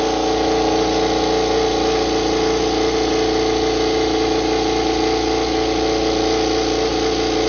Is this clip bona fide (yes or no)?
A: yes